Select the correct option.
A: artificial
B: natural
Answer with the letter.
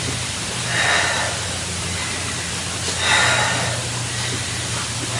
B